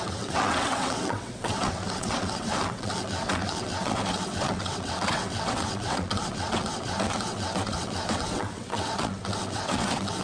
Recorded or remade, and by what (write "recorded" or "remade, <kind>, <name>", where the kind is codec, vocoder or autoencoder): remade, vocoder, WaveNeXt